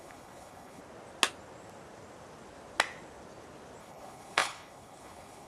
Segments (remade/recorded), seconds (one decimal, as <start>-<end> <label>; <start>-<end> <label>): 0.0-0.8 remade; 0.8-3.8 recorded; 3.8-5.5 remade